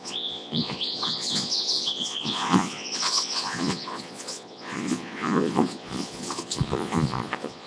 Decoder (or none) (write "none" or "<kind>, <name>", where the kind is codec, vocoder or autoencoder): vocoder, Vocos